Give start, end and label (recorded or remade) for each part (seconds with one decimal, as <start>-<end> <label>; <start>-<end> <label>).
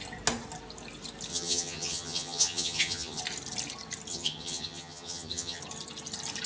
0.0-1.3 recorded; 1.3-3.2 remade; 3.2-4.1 recorded; 4.1-5.6 remade; 5.6-6.5 recorded